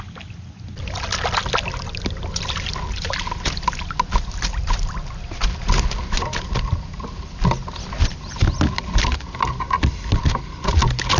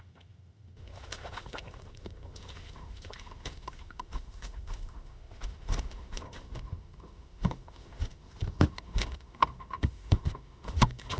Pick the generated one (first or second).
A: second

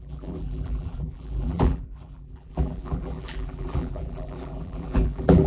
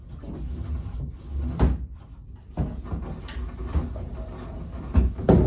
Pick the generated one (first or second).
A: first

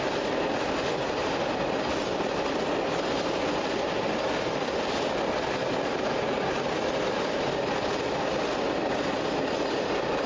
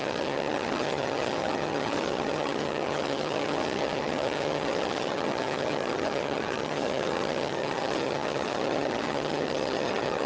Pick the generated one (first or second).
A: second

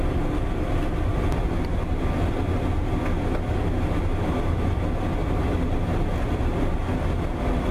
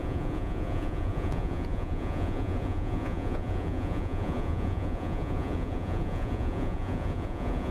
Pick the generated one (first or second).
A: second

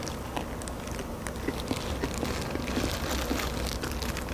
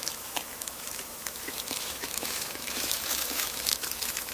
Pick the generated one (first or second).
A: second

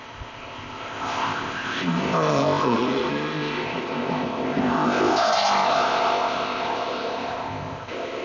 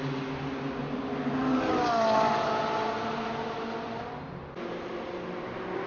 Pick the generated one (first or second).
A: first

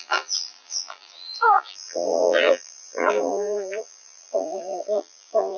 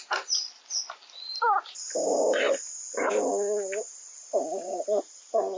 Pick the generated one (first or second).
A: first